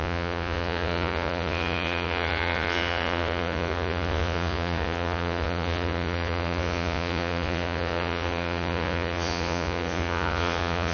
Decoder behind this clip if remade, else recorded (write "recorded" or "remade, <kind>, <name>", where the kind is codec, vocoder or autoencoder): remade, vocoder, Vocos